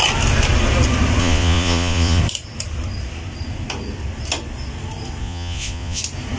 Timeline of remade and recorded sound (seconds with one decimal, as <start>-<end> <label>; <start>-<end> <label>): 0.0-1.2 recorded; 1.2-2.2 remade; 2.2-5.2 recorded; 5.2-6.0 remade; 6.0-6.4 recorded